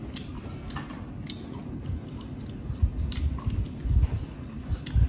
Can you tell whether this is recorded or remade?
recorded